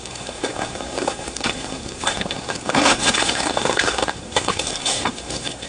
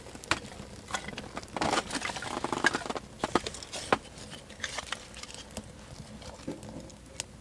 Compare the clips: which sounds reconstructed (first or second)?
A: first